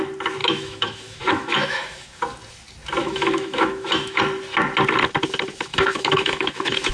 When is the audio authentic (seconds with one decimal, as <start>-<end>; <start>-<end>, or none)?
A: 0.0-0.4; 2.2-3.0; 4.2-5.7